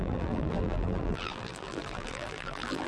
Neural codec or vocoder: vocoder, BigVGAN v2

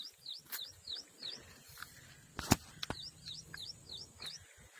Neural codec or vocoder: none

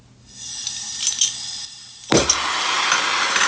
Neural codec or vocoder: none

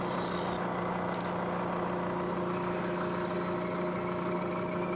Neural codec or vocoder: none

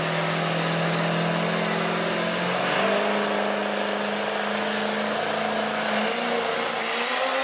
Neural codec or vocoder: none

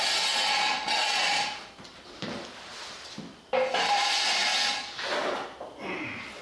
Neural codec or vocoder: none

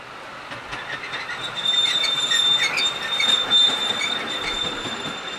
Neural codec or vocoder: none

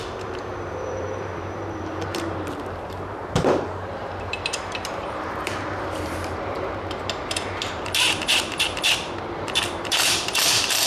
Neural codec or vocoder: vocoder, BigVGAN v2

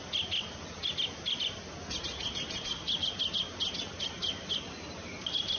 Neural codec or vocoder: none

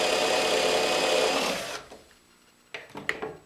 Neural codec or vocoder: none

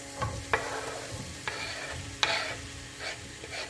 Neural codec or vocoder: none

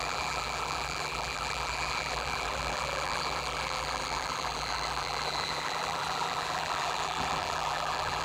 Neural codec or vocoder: vocoder, BigVGAN v2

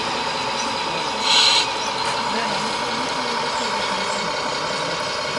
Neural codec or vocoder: none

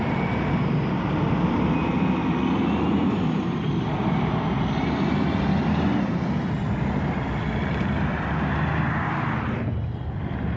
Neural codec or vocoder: vocoder, BigVGAN v2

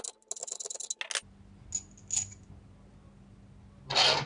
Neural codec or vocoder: none